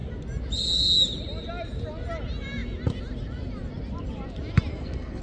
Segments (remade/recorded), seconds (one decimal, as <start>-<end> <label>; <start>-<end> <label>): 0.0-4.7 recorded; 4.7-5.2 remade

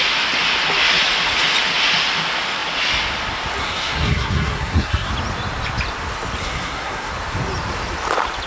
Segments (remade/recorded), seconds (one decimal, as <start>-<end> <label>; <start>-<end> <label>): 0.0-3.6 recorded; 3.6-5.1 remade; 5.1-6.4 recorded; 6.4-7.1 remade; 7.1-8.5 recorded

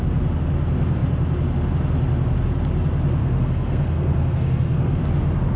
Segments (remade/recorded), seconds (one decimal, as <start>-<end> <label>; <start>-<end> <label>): 0.0-3.2 recorded; 3.2-5.0 remade; 5.0-5.6 recorded